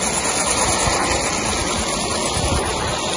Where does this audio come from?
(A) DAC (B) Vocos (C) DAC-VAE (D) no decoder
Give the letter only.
D